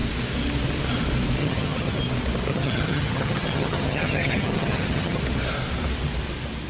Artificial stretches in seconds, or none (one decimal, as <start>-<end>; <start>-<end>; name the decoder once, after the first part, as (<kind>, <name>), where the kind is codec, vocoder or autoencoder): 1.4-2.0 (vocoder, HiFi-GAN); 2.5-5.2